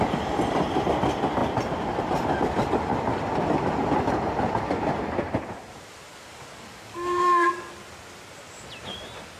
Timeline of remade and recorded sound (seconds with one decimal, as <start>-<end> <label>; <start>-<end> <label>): 0.0-6.1 recorded; 6.1-7.7 remade; 7.7-9.4 recorded